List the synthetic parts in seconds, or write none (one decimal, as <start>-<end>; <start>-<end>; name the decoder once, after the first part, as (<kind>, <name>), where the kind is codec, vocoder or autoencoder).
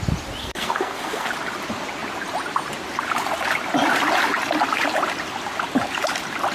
0.4-1.3 (codec, SNAC)